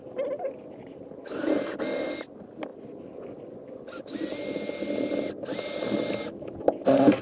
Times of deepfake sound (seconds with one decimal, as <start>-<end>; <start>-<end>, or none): none